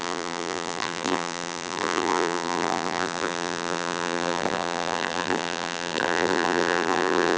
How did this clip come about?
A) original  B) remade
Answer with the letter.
B